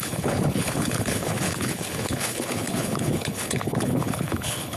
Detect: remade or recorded remade